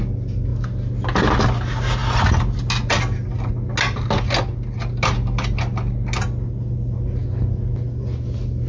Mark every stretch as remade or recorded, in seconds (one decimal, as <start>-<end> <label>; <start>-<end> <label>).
0.0-8.7 recorded